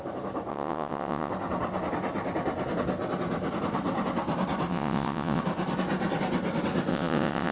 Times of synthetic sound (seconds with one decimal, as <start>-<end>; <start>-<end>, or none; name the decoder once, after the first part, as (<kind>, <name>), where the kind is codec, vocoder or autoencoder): 0.5-1.3 (vocoder, WaveNeXt); 4.7-5.4; 6.9-7.5